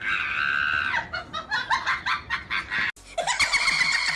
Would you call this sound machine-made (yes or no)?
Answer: no